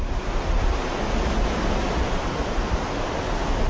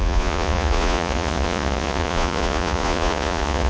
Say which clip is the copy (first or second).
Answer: second